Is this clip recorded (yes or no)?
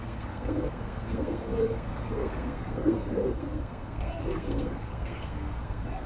no